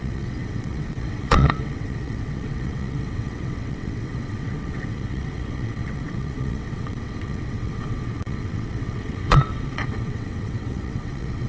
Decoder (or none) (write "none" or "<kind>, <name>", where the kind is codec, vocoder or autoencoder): vocoder, WaveNeXt